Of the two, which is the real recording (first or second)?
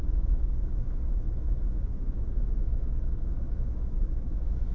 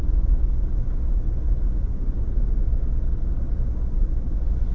second